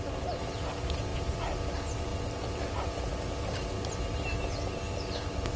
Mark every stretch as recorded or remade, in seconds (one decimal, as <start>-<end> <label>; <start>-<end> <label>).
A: 0.0-5.6 recorded